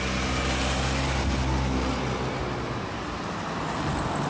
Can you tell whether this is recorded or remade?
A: recorded